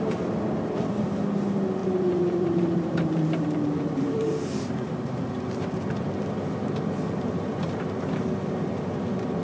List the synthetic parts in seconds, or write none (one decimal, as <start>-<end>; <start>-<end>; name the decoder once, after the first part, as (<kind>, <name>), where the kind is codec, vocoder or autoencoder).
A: 1.8-5.3 (vocoder, BigVGAN v2)